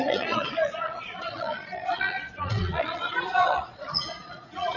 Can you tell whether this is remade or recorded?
remade